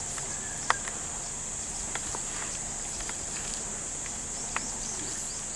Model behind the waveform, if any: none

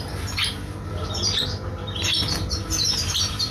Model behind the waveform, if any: none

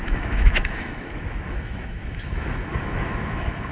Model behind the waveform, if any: autoencoder, DAC-VAE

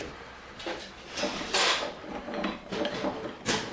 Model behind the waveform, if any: none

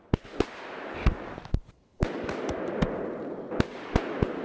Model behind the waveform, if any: none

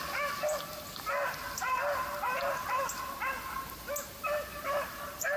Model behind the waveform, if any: none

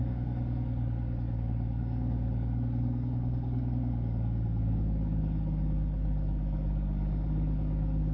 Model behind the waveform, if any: codec, DAC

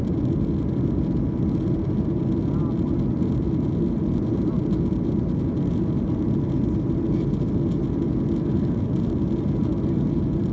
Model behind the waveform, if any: none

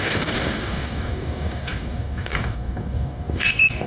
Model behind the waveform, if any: codec, DAC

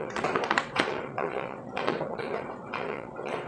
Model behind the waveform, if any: vocoder, WaveNeXt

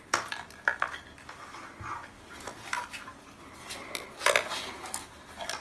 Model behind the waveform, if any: none